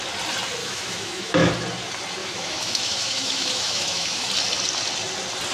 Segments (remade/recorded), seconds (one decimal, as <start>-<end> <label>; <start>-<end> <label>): 0.0-0.6 recorded; 0.6-1.5 remade; 1.5-2.2 recorded; 2.2-4.3 remade; 4.3-5.5 recorded